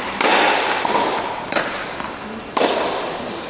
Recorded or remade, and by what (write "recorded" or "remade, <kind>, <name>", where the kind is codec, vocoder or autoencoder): recorded